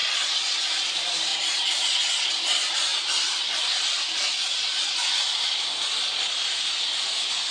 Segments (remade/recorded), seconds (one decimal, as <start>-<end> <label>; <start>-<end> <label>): 0.0-0.9 recorded; 0.9-1.3 remade; 1.3-2.3 recorded; 2.3-7.5 remade